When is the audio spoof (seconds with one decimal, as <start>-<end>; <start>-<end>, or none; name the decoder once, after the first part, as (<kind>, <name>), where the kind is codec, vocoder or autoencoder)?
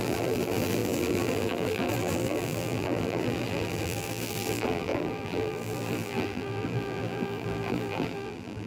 0.0-8.7 (vocoder, BigVGAN v2)